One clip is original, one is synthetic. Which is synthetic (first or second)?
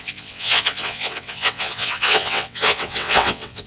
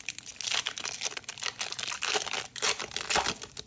first